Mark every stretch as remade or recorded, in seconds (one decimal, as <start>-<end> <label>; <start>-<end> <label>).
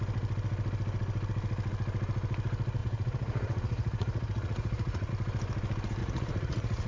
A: 0.0-2.8 recorded; 2.8-5.1 remade; 5.1-6.0 recorded; 6.0-6.9 remade